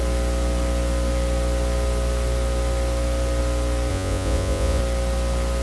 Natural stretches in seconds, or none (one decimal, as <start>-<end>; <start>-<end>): 0.0-3.9; 4.8-5.6

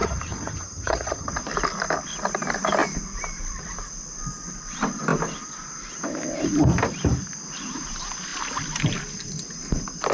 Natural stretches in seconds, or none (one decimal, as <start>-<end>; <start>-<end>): 1.3-10.1

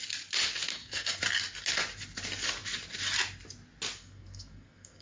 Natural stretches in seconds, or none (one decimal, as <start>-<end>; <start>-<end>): 0.0-0.7; 1.2-4.0

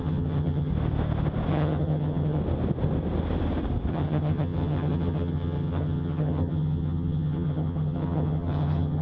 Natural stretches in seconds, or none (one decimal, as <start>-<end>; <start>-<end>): 0.7-1.5; 2.4-3.9

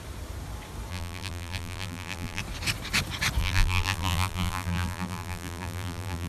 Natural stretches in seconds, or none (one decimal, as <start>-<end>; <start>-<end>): 0.0-0.9; 2.4-3.4

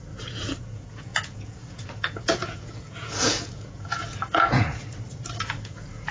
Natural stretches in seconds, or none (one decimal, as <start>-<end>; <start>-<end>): 4.8-5.4

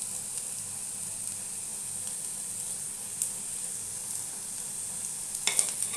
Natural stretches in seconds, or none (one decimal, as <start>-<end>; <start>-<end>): 0.0-6.0

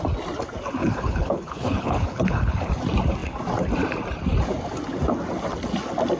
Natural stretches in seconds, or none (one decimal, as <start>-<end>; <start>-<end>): 0.0-0.8; 2.7-6.2